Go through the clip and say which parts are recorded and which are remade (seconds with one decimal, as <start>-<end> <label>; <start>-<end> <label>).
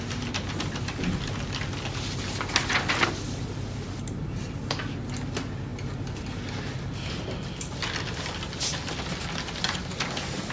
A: 0.0-10.5 recorded